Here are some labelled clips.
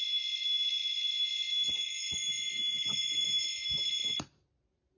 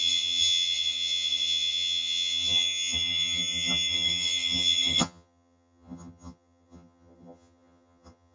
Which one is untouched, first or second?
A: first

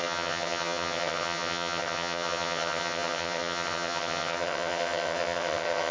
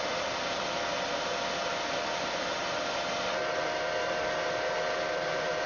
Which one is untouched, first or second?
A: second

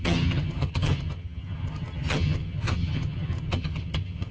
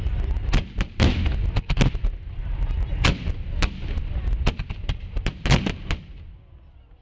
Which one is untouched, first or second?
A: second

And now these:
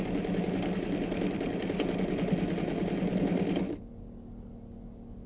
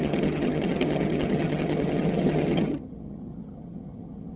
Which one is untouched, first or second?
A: first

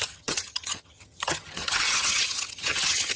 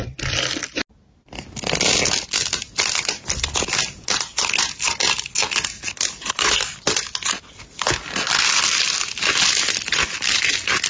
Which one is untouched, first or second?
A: second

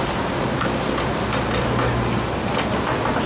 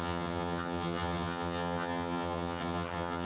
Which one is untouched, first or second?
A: first